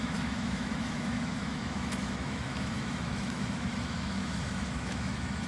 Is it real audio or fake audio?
fake